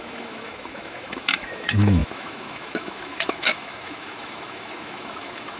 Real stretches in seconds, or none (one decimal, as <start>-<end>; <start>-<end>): none